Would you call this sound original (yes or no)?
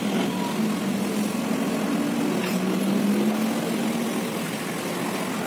yes